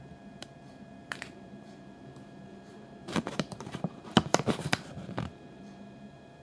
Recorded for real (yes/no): no